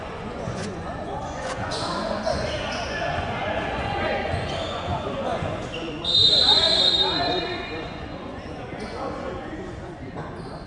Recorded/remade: remade